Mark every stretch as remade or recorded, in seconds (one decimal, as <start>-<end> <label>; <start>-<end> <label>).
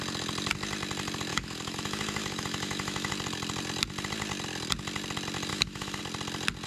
0.0-1.3 recorded; 1.3-3.1 remade; 3.1-5.5 recorded; 5.5-6.0 remade; 6.0-6.7 recorded